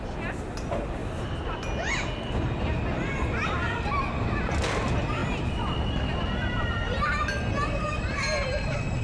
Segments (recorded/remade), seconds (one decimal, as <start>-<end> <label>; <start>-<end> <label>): 0.0-9.0 recorded